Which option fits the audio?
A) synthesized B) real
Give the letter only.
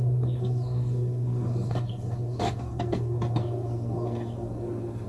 A